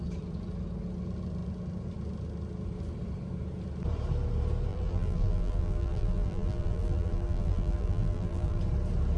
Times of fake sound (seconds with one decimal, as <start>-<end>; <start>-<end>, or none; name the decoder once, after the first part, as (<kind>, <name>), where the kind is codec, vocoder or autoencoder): 4.7-8.6 (vocoder, BigVGAN v2)